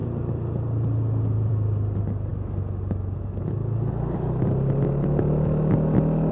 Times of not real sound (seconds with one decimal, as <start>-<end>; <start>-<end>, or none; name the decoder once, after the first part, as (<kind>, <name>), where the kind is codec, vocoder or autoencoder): none